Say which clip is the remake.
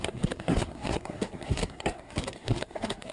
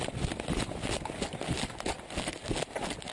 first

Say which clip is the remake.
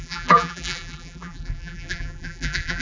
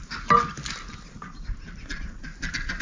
first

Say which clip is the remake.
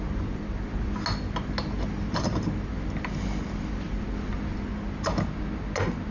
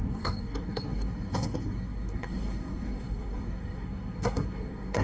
second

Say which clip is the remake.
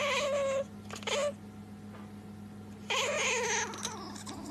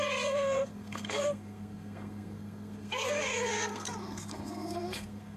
second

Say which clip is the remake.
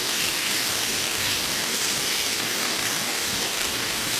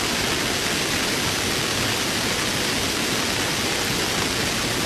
first